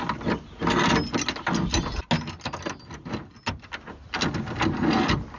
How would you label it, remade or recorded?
recorded